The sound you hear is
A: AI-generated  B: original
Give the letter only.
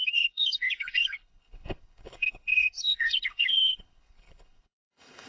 A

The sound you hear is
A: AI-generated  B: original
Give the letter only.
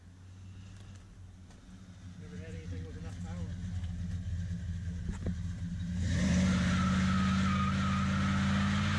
B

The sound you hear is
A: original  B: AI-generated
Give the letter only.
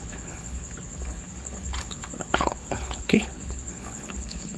B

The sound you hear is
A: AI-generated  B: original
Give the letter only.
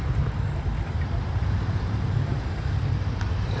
A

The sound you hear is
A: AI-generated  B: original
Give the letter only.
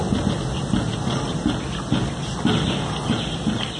B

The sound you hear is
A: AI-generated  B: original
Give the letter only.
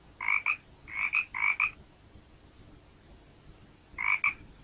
B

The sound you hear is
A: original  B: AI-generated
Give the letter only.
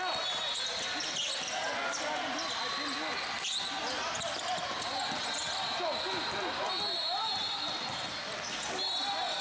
A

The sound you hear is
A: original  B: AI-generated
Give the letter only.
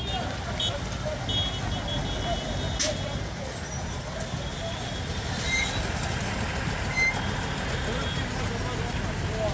A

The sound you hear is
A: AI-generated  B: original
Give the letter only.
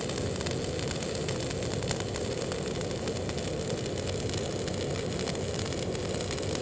B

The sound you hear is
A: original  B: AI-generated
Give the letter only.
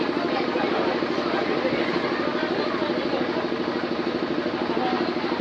A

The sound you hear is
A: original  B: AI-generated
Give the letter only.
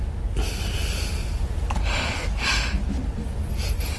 A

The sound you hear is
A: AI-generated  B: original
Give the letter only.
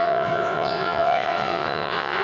A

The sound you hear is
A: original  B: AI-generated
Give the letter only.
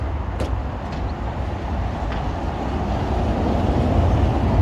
A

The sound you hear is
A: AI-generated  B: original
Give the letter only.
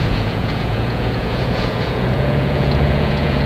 A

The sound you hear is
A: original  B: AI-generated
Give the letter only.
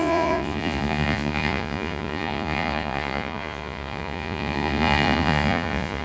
B